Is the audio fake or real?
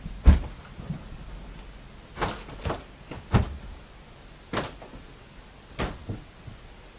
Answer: real